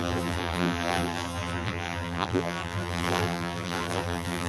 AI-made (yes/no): yes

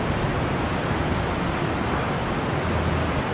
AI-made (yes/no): no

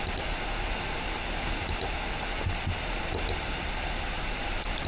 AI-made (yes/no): no